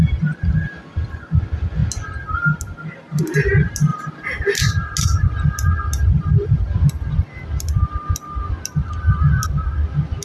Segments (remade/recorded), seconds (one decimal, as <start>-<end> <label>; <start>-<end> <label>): 0.0-10.2 recorded